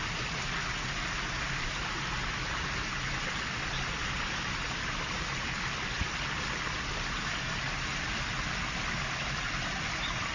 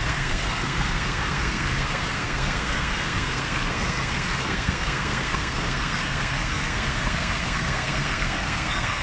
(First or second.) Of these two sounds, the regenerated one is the second